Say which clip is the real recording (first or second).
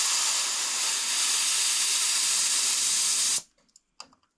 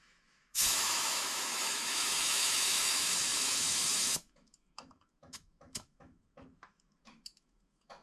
first